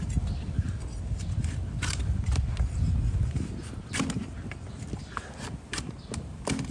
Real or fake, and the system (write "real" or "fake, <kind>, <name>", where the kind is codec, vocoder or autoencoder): real